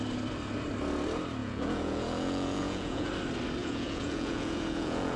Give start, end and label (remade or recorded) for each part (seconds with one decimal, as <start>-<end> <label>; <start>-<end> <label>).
0.0-1.4 recorded; 1.4-3.1 remade; 3.1-3.6 recorded; 3.6-5.2 remade

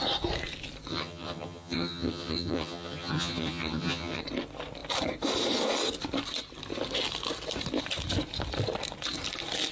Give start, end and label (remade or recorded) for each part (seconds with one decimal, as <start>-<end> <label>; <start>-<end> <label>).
0.0-0.9 recorded; 0.9-4.2 remade; 4.2-9.7 recorded